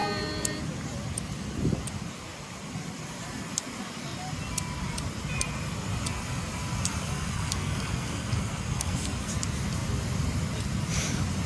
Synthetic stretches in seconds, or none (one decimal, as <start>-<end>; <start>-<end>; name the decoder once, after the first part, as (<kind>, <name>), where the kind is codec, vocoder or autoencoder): 7.1-9.3 (codec, SNAC)